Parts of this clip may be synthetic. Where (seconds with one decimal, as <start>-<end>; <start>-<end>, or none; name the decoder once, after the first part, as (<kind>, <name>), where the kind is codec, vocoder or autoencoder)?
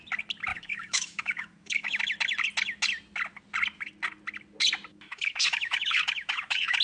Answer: 0.5-2.0 (autoencoder, DAC-VAE); 4.9-6.8